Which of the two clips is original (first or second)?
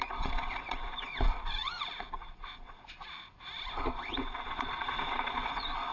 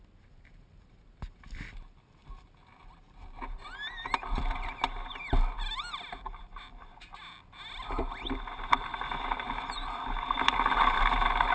second